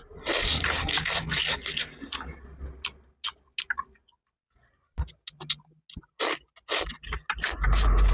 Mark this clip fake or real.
real